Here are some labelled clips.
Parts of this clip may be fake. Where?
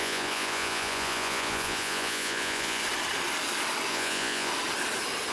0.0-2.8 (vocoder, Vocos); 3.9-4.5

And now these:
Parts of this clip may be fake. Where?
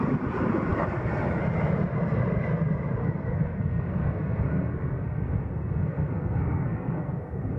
3.0-7.6 (codec, SNAC)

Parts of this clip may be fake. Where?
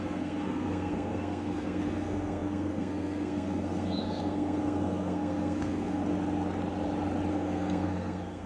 0.0-6.0 (codec, SNAC); 7.3-8.5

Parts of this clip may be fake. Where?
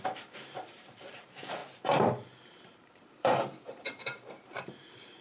0.0-1.6 (vocoder, BigVGAN v2); 2.6-5.2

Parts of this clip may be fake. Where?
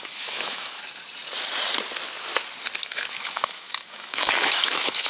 0.0-1.0 (autoencoder, DAC-VAE); 2.8-5.1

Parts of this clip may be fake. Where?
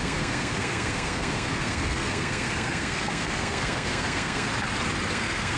0.0-4.5 (codec, SNAC); 5.1-5.6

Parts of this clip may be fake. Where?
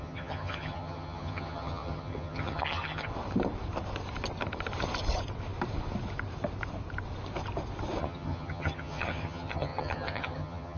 0.0-3.1 (vocoder, HiFi-GAN); 8.0-10.8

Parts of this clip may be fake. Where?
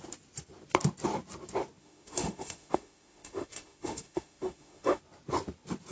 1.8-5.0 (autoencoder, DAC-VAE)